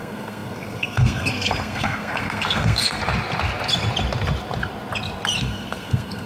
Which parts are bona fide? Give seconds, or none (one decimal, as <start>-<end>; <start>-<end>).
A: 3.0-5.4